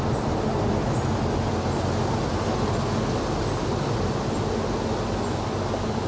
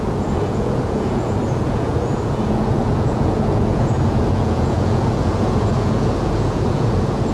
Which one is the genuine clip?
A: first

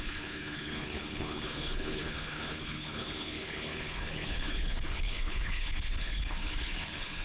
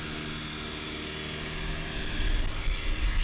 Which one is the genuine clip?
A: second